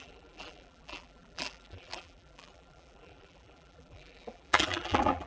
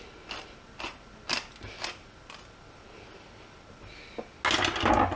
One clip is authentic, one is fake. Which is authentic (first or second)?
second